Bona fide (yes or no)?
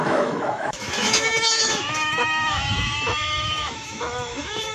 no